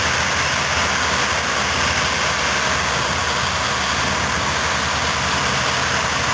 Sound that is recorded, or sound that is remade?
recorded